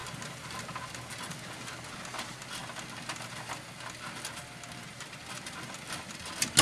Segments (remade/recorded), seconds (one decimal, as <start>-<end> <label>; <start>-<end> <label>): 0.0-6.6 recorded